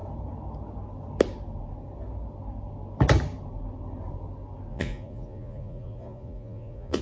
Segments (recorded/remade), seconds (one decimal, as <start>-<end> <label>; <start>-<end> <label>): 0.0-4.7 recorded; 4.7-7.0 remade